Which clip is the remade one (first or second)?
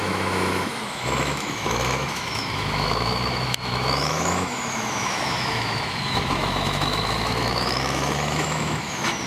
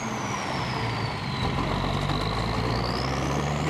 first